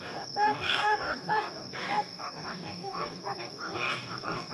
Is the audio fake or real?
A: fake